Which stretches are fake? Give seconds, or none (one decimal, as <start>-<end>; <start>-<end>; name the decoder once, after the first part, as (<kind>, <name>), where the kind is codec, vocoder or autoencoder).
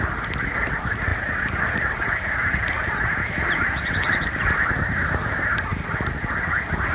none